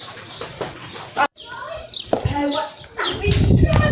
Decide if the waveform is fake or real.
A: fake